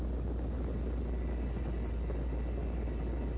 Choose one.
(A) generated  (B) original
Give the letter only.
B